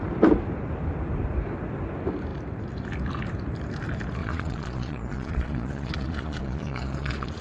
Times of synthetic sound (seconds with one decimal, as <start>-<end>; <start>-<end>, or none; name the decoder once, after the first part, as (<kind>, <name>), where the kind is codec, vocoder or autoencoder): 4.2-7.4 (vocoder, Vocos)